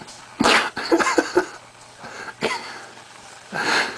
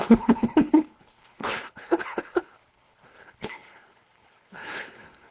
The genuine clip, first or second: first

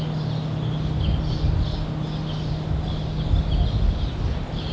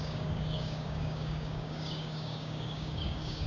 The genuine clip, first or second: first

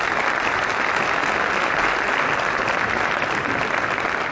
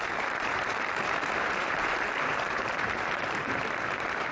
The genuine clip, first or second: first